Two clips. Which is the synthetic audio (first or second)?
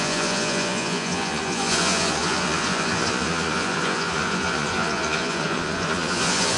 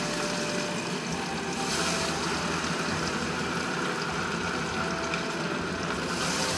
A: first